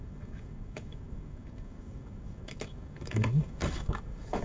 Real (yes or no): no